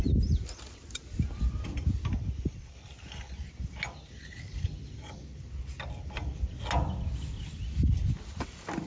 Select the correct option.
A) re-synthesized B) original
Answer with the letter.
B